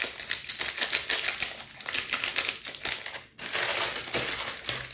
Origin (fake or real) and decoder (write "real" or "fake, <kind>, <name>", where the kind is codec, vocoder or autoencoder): real